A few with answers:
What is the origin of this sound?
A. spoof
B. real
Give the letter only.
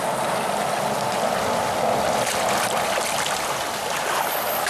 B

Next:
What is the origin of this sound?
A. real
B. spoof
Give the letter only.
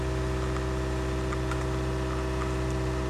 A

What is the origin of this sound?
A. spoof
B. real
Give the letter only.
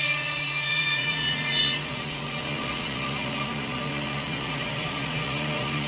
A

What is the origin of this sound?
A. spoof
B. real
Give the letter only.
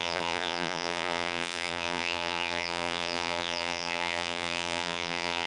A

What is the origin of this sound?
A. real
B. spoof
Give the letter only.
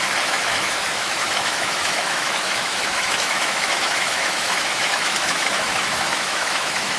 B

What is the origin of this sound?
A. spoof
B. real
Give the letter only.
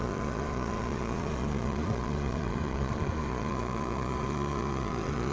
A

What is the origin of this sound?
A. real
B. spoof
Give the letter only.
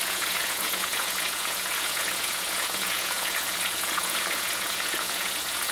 B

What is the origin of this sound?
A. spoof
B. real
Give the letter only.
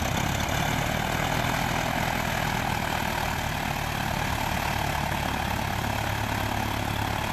B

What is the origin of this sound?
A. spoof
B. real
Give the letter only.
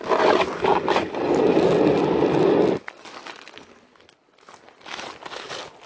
B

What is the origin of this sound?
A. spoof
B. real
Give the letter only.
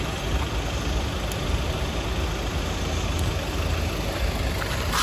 B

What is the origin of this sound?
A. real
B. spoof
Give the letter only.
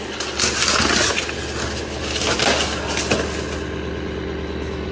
A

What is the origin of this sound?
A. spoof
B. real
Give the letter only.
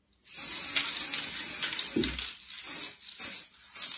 B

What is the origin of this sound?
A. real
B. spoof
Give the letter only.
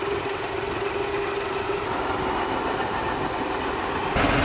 A